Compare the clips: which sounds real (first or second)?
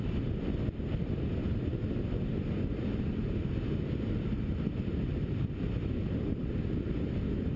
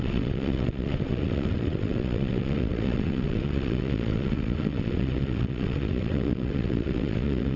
first